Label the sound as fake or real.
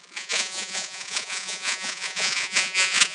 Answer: fake